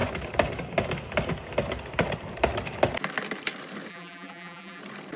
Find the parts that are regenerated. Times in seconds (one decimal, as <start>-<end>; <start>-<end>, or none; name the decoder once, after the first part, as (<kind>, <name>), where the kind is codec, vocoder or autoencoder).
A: 3.9-4.8 (vocoder, BigVGAN v2)